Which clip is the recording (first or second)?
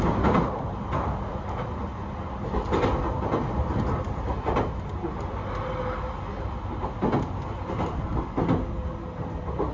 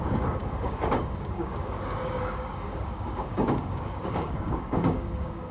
first